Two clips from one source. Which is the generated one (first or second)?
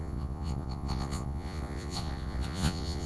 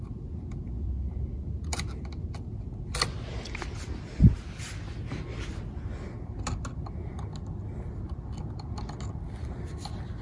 first